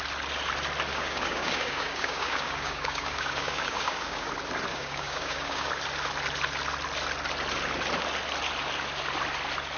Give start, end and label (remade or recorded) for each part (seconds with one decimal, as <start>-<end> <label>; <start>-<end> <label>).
0.0-0.9 recorded; 0.9-4.3 remade; 4.3-4.7 recorded; 4.7-5.7 remade; 5.7-9.8 recorded